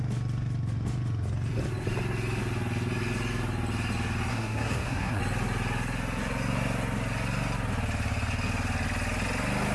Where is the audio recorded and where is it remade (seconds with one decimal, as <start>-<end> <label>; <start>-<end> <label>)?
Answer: 0.0-4.3 recorded; 4.3-5.2 remade; 5.2-9.7 recorded

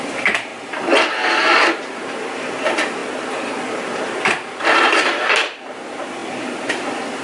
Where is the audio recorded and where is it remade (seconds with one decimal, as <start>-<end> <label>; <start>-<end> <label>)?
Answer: 0.0-0.5 remade; 0.5-1.6 recorded; 1.6-7.2 remade

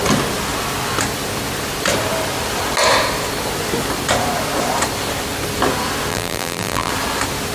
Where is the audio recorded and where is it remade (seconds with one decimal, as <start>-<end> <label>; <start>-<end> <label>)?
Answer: 0.0-6.1 recorded; 6.1-6.9 remade; 6.9-7.5 recorded

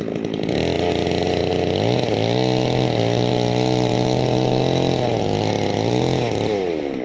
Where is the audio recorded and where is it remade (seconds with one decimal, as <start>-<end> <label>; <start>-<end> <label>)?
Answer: 0.0-7.0 recorded